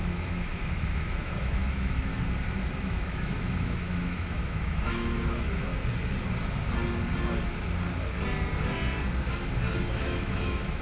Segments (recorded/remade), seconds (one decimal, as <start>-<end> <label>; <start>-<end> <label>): 0.0-2.1 remade; 2.1-2.8 recorded; 2.8-5.7 remade; 5.7-9.9 recorded; 9.9-10.8 remade